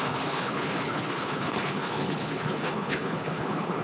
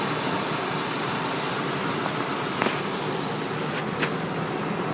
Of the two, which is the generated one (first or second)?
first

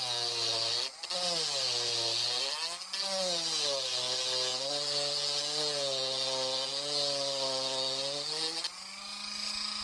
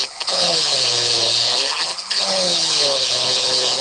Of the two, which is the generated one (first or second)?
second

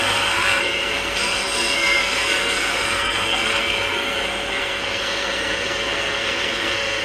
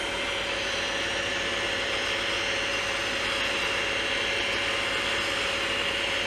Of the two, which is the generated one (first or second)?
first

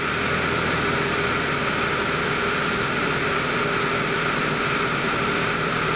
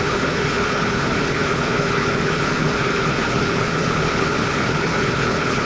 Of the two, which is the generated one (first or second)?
second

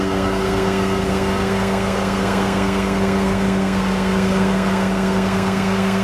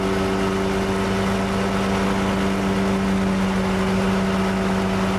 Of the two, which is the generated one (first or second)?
first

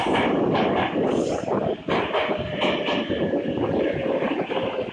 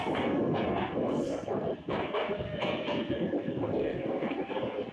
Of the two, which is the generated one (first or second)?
second